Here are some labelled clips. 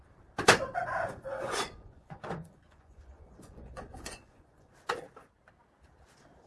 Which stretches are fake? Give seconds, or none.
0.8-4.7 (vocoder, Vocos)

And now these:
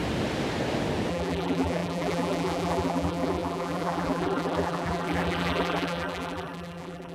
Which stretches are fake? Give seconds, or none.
1.1-7.1 (vocoder, BigVGAN v2)

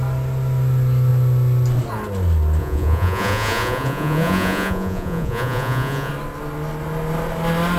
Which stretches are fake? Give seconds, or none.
2.6-6.1 (vocoder, Vocos)